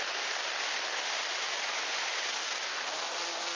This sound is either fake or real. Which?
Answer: real